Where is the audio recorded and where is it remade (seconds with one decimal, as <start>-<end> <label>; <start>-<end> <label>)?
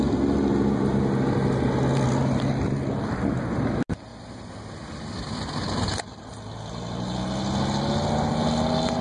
0.0-9.0 recorded